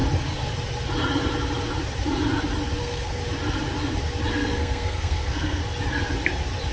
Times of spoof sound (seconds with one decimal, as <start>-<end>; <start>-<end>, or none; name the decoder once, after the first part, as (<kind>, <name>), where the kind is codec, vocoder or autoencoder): 2.8-3.2 (codec, SNAC); 4.3-5.6